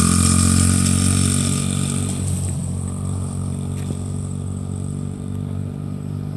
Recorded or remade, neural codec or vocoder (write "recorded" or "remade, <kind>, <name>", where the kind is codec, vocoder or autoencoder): remade, vocoder, BigVGAN v2